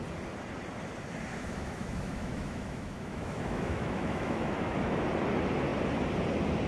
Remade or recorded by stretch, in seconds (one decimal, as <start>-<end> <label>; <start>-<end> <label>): 0.0-1.3 recorded; 1.3-5.0 remade; 5.0-6.7 recorded